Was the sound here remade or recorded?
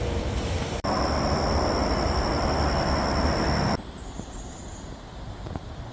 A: remade